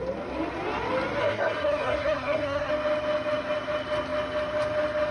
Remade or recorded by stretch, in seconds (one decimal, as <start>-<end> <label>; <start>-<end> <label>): 0.0-1.2 recorded; 1.2-2.7 remade; 2.7-5.1 recorded